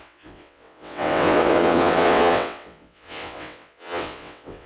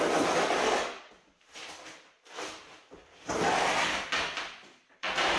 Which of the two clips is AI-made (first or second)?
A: first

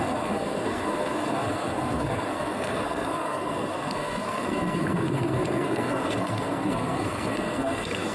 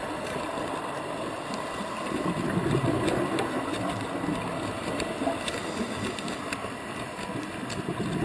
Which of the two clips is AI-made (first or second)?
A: first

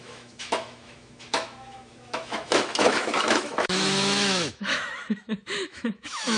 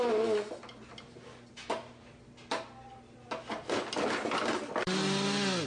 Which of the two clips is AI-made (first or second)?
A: first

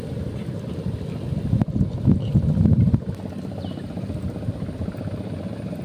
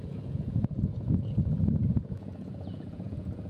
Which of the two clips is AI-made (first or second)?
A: second